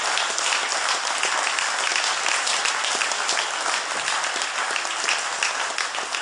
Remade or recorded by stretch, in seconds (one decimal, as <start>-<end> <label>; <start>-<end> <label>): 0.0-1.9 recorded; 1.9-4.9 remade; 4.9-6.2 recorded